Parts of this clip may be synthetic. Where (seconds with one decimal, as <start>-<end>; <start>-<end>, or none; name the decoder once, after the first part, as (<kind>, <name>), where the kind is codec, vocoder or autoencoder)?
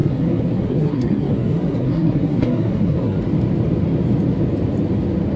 0.0-3.2 (codec, SNAC)